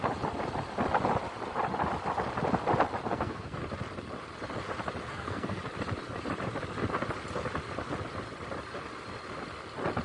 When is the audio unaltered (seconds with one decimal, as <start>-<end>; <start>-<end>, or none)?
0.0-3.1; 3.6-5.1; 5.6-10.0